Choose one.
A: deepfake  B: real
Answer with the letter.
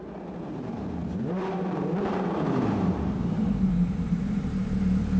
A